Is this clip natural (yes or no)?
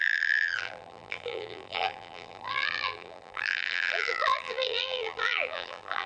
no